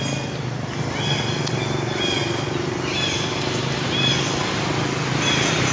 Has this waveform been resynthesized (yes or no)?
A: no